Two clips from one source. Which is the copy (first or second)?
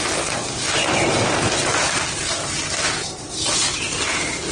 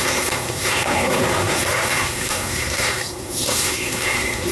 second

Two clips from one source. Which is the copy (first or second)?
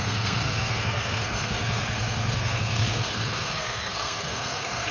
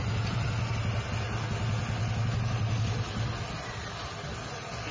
first